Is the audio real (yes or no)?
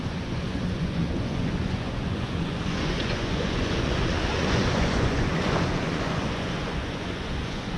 no